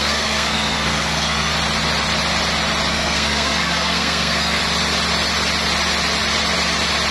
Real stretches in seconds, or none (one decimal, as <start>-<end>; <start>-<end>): 1.5-2.9; 4.6-7.1